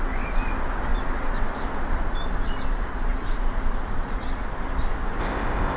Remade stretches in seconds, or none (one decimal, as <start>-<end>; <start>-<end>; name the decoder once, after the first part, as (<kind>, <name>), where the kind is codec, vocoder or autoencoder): 5.2-5.8 (codec, ZipCodec)